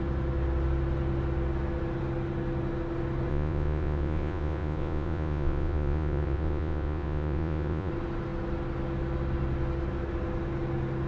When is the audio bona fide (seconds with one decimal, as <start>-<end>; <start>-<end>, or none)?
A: 0.0-3.3; 7.9-11.1